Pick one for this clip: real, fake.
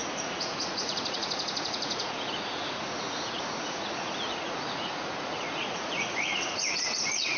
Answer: fake